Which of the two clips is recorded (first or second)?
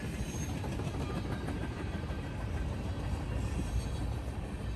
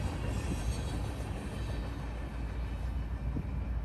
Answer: second